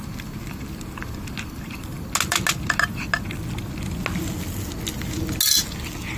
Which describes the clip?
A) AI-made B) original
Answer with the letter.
B